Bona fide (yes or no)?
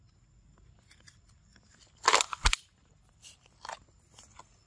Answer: yes